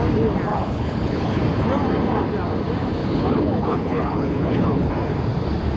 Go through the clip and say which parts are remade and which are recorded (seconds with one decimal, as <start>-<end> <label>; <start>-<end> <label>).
0.0-0.5 recorded; 0.5-1.4 remade; 1.4-3.0 recorded; 3.0-4.9 remade; 4.9-5.8 recorded